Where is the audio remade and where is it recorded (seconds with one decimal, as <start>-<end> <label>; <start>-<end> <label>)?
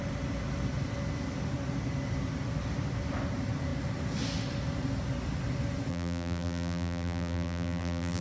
0.0-5.9 recorded; 5.9-8.2 remade